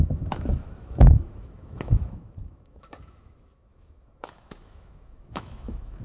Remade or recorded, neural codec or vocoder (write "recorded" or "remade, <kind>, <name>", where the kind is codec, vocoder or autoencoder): remade, autoencoder, DAC-VAE